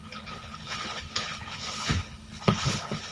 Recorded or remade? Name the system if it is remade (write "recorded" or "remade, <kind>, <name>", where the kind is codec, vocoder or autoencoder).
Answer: remade, codec, HILCodec